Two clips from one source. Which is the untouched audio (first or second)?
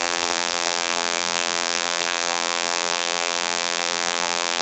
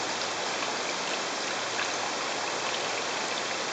second